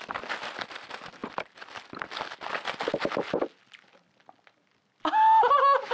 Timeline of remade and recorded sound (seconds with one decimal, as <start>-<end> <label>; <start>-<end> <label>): 0.0-5.9 recorded